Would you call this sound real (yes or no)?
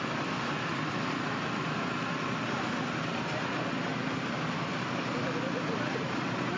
no